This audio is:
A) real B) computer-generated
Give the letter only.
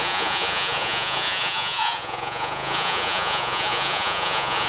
B